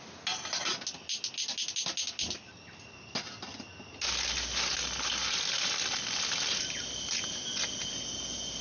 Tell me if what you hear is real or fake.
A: real